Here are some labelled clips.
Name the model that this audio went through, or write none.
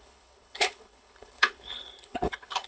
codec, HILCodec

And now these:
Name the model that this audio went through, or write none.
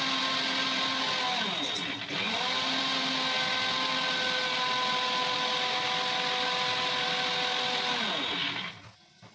none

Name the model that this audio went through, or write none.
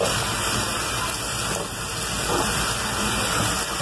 none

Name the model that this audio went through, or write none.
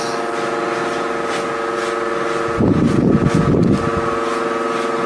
none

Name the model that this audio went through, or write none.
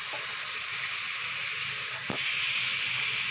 none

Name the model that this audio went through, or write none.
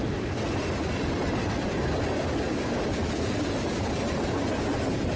none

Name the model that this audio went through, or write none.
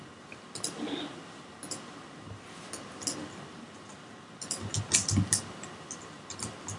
none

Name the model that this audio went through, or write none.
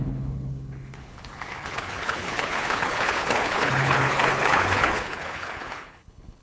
codec, HILCodec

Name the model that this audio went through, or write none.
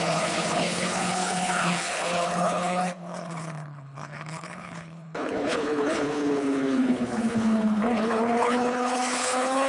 codec, HILCodec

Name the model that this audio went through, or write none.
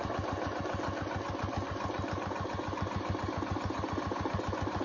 none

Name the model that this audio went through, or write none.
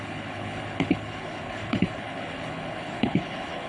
codec, HILCodec